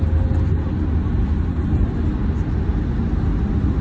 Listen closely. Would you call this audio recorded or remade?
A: recorded